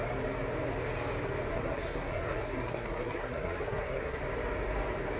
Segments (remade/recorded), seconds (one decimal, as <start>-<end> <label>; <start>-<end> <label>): 0.0-1.5 recorded; 1.5-4.2 remade; 4.2-5.2 recorded